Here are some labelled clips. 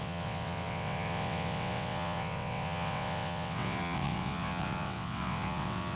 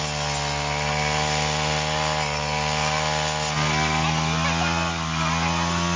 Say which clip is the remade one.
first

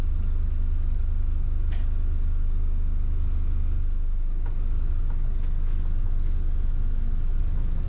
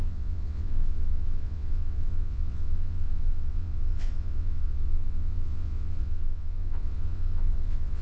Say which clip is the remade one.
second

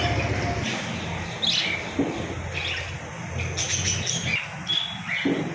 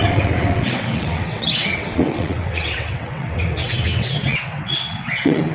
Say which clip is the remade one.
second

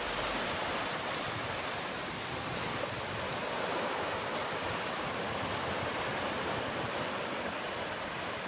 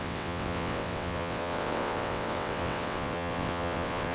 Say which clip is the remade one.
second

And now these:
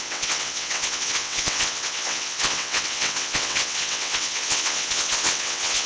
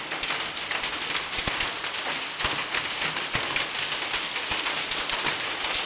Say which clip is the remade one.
first